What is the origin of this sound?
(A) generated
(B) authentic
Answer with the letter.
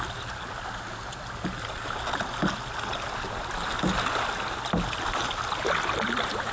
B